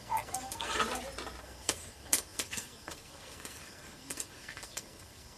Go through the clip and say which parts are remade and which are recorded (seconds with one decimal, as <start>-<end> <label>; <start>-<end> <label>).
0.0-0.8 remade; 0.8-1.4 recorded; 1.4-5.4 remade